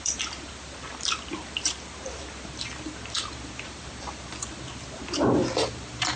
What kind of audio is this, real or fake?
fake